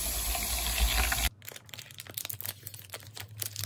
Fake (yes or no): no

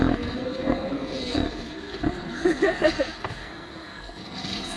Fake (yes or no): yes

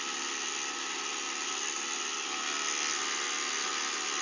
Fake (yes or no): no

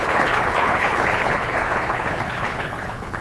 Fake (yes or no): yes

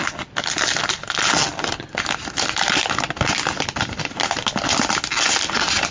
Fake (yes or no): no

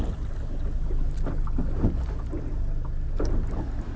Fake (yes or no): no